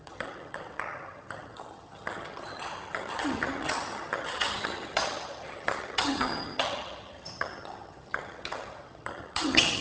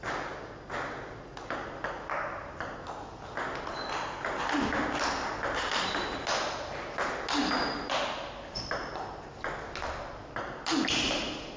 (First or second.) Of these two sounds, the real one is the second